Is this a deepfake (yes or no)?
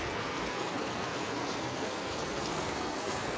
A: yes